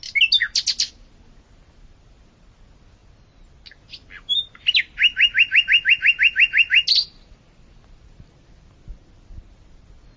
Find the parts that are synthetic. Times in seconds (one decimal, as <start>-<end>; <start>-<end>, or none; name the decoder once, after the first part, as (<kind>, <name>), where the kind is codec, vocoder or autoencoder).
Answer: none